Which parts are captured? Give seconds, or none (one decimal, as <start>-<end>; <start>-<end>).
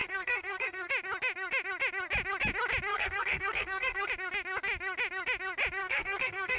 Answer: 0.9-2.9; 4.1-5.8